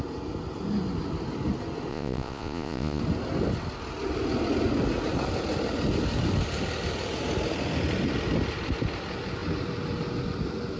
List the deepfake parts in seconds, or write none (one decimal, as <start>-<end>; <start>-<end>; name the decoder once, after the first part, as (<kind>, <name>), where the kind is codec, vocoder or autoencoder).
1.9-3.0 (vocoder, Vocos)